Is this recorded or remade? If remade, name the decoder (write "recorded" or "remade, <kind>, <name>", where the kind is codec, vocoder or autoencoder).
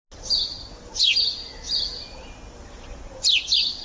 recorded